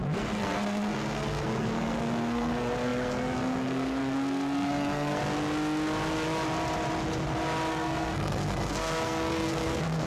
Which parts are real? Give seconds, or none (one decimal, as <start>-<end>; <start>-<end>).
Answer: 5.2-7.7